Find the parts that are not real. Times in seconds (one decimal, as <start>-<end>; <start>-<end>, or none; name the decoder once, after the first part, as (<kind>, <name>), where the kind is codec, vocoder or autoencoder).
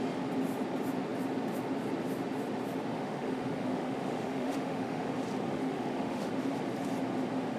2.9-5.1 (autoencoder, DAC-VAE); 5.5-6.3